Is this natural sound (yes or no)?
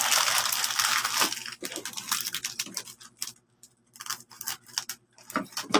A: yes